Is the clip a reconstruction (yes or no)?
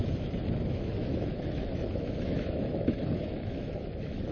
yes